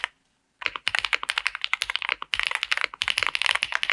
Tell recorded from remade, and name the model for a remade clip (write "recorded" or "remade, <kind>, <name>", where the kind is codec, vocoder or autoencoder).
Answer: recorded